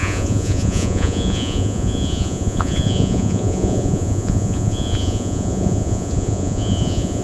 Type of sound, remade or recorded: remade